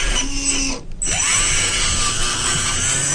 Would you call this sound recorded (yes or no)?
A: yes